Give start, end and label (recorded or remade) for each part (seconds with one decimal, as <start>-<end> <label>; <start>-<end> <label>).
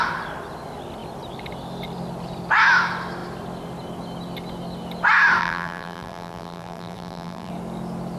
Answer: 0.0-5.4 recorded; 5.4-7.5 remade; 7.5-8.2 recorded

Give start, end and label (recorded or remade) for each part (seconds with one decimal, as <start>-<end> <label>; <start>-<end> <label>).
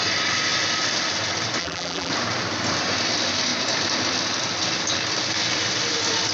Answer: 0.0-1.6 recorded; 1.6-2.1 remade; 2.1-6.3 recorded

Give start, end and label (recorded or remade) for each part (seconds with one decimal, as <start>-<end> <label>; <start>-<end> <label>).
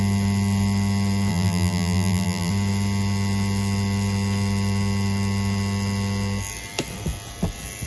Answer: 0.0-1.3 recorded; 1.3-2.5 remade; 2.5-7.9 recorded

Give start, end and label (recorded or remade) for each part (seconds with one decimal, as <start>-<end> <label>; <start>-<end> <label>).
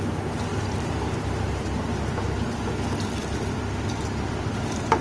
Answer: 0.0-0.5 recorded; 0.5-1.6 remade; 1.6-5.0 recorded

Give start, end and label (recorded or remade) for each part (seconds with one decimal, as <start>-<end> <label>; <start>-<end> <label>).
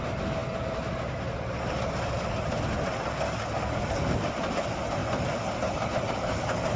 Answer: 0.0-6.8 recorded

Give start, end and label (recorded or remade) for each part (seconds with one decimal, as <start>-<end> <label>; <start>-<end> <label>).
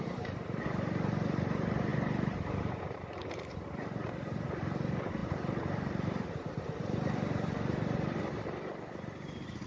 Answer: 0.0-1.9 remade; 1.9-2.6 recorded; 2.6-9.7 remade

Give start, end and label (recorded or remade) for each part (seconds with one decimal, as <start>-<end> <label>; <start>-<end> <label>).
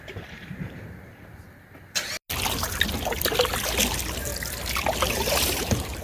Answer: 0.0-1.3 remade; 1.3-3.9 recorded; 3.9-4.3 remade; 4.3-5.1 recorded; 5.1-6.0 remade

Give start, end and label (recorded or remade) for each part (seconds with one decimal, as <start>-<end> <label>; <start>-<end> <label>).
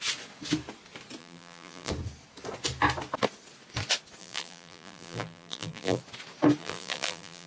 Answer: 0.0-1.2 recorded; 1.2-1.9 remade; 1.9-4.2 recorded; 4.2-6.0 remade; 6.0-6.6 recorded; 6.6-7.5 remade